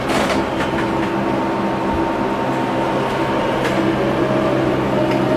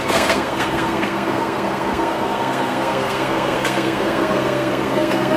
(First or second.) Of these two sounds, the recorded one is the first